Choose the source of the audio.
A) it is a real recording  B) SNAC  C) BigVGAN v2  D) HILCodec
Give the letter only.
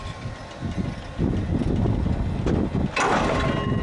A